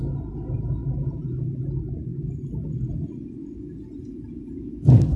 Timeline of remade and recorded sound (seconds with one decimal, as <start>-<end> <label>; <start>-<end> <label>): 0.0-5.2 recorded